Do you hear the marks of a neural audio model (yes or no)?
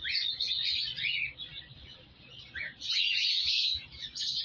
yes